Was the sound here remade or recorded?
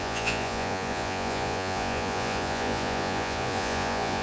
remade